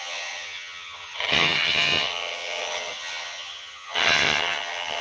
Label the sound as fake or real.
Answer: fake